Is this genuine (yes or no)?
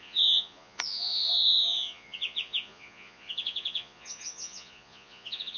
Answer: no